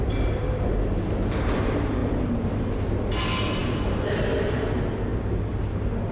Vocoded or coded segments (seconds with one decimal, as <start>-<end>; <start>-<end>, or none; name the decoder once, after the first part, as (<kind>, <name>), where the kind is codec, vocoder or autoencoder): none